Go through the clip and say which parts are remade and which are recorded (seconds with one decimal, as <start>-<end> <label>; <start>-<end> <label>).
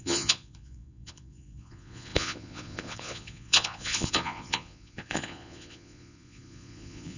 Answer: 0.0-7.2 remade